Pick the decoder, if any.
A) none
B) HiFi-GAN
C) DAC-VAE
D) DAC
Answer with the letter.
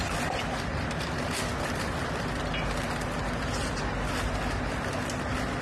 A